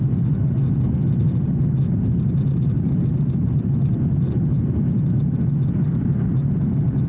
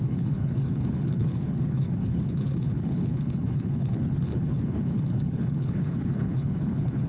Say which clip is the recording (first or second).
first